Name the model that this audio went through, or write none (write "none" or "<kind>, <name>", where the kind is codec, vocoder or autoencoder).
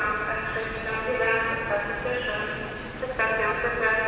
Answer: none